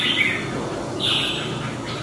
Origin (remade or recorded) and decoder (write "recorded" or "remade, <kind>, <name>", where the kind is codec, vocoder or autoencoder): recorded